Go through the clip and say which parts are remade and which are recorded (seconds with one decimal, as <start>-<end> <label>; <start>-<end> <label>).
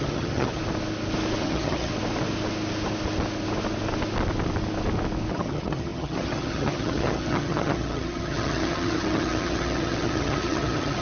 0.0-0.6 remade; 0.6-1.4 recorded; 1.4-1.9 remade; 1.9-5.3 recorded; 5.3-11.0 remade